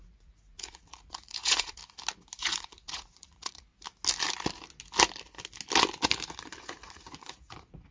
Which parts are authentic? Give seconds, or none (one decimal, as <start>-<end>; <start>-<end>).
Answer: 1.8-2.4; 3.7-6.6

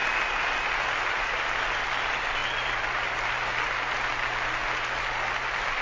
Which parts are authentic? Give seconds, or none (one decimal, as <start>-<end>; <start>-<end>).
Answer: 0.0-5.8